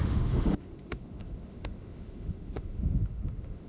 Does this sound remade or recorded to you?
remade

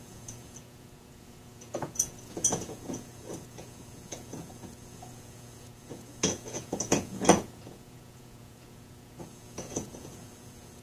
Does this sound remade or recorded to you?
remade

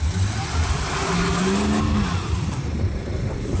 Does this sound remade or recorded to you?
recorded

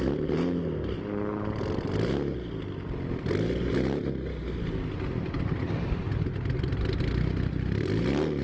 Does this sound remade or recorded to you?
recorded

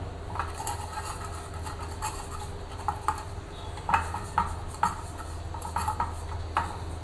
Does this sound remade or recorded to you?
recorded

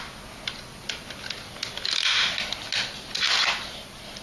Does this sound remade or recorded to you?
recorded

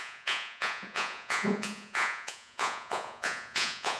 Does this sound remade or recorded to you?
remade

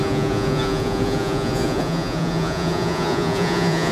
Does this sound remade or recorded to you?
remade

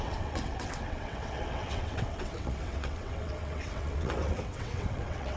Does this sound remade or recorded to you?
remade